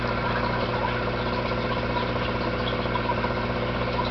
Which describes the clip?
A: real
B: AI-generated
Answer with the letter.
A